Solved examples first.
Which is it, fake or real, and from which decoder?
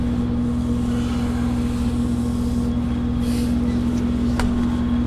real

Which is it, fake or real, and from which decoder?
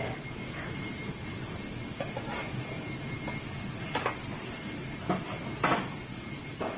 real